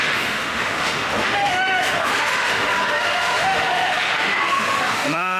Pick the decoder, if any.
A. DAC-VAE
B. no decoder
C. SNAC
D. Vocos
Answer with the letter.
A